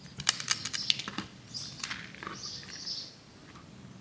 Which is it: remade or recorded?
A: recorded